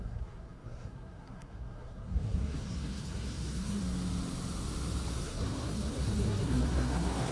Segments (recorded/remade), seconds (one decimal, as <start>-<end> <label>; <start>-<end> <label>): 0.0-3.8 remade; 3.8-5.1 recorded; 5.1-7.3 remade